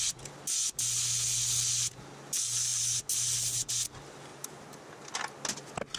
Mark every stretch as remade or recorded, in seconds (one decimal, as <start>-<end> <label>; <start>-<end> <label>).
0.0-6.0 recorded